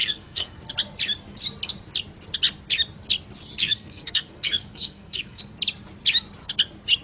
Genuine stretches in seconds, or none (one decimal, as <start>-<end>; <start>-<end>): 0.6-3.6; 5.4-7.0